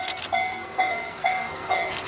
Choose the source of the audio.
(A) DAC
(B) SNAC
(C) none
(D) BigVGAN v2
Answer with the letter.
B